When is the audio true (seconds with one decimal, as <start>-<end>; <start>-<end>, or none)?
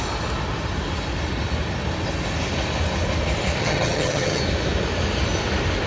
0.0-3.6; 4.4-5.9